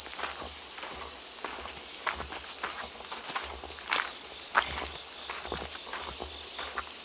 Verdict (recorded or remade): recorded